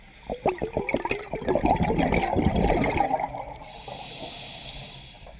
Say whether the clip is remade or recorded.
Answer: recorded